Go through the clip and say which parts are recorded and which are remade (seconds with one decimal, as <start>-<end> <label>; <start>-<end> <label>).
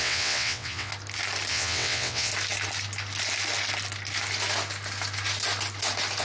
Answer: 0.0-0.9 remade; 0.9-1.5 recorded; 1.5-2.3 remade; 2.3-6.2 recorded